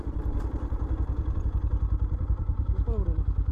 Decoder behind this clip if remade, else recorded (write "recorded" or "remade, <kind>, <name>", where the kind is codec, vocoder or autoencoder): remade, vocoder, BigVGAN v2